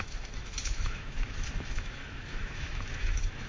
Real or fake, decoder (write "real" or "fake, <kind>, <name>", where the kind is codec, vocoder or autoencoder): fake, autoencoder, DAC-VAE